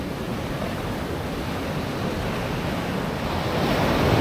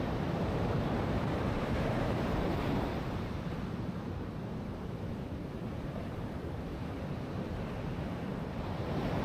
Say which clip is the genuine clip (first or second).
first